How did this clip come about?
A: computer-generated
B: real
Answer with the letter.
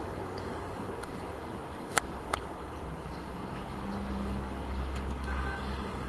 A